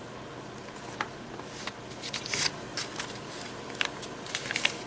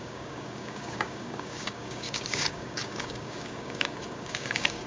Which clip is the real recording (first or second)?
first